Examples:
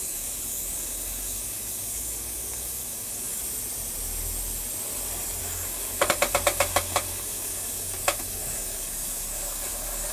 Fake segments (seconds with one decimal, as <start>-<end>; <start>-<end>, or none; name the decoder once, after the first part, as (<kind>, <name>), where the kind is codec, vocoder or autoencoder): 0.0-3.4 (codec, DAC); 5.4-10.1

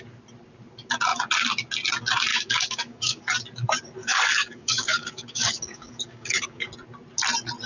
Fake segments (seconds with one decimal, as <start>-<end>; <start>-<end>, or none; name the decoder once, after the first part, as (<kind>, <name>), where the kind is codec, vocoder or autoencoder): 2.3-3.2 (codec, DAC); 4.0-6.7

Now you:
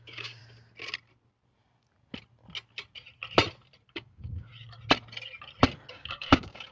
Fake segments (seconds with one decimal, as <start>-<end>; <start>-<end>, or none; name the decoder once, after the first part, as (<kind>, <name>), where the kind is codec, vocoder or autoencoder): 0.0-0.4 (codec, DAC); 3.9-4.5; 5.9-6.7

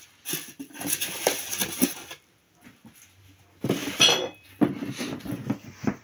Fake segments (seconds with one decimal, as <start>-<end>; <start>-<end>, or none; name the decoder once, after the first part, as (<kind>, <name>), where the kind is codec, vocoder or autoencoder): none

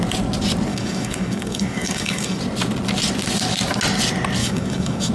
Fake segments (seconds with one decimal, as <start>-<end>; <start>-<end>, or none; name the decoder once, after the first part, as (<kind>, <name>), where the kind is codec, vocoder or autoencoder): 0.7-2.4 (codec, DAC); 4.4-5.1

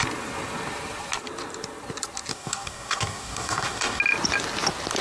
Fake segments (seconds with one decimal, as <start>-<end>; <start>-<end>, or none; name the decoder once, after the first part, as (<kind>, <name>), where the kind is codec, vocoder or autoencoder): 2.3-4.0 (codec, DAC)

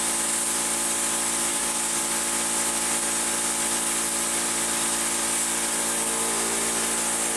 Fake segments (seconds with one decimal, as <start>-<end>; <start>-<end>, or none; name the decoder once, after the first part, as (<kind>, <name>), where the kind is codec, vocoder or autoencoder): 1.5-2.0 (codec, DAC)